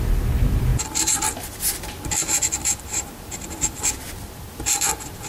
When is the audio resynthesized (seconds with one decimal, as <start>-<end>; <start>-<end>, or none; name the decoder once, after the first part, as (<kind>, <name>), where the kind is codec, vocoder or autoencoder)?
none